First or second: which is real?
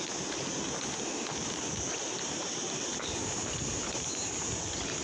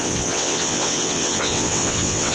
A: first